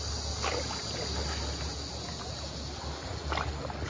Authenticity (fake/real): real